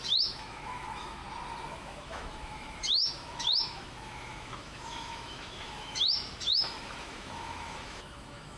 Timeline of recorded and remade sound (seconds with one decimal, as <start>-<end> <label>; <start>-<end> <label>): 0.0-1.2 remade; 1.2-1.7 recorded; 1.7-8.6 remade